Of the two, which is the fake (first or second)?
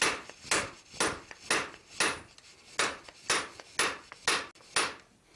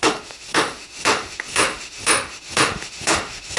second